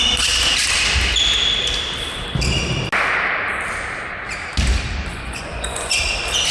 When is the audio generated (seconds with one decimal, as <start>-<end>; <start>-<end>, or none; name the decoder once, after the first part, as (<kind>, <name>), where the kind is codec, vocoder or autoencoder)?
5.1-6.0 (vocoder, Vocos)